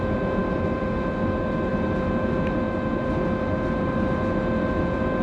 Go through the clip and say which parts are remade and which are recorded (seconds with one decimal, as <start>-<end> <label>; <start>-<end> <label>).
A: 0.0-5.2 recorded